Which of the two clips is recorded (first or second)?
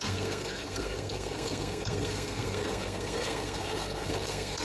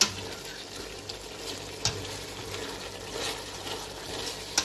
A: second